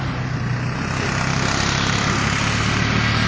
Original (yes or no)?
yes